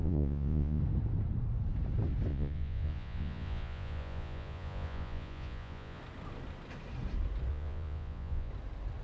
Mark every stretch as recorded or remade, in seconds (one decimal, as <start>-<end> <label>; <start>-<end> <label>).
0.0-0.8 remade; 0.8-2.3 recorded; 2.3-6.0 remade; 6.0-7.5 recorded; 7.5-8.5 remade; 8.5-9.0 recorded